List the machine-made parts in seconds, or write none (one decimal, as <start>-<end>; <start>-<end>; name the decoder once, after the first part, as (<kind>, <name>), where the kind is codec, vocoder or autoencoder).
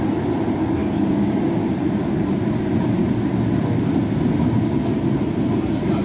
none